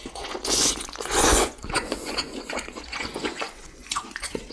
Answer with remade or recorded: remade